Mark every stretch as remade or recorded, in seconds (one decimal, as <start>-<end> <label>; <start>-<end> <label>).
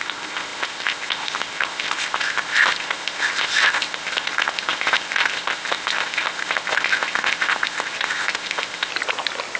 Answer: 0.0-8.9 remade; 8.9-9.6 recorded